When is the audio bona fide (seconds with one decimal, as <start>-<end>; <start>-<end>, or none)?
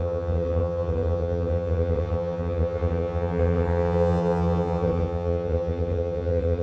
none